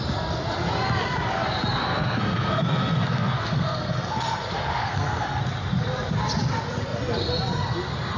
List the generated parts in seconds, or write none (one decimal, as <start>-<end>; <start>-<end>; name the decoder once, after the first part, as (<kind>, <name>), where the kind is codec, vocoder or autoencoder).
1.8-5.4 (codec, SNAC)